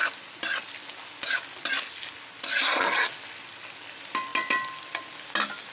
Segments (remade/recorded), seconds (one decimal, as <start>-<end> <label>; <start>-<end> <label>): 0.0-5.7 recorded